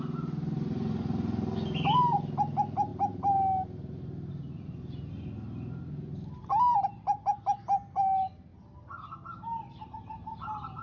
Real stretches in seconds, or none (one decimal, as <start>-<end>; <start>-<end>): 0.0-10.8